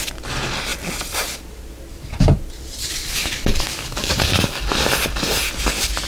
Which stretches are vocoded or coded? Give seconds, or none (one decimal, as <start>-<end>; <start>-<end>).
2.8-4.7